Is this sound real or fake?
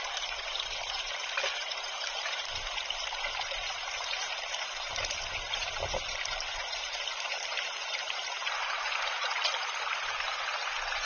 fake